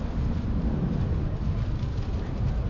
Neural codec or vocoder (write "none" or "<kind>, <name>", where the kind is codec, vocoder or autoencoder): vocoder, BigVGAN v2